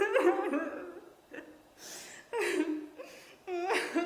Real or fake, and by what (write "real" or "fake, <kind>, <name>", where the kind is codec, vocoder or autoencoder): real